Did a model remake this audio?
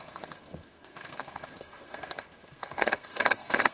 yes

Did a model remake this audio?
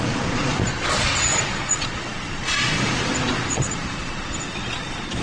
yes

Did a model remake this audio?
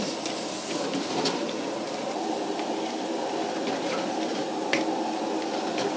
no